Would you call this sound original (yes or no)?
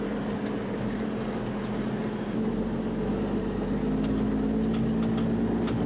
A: yes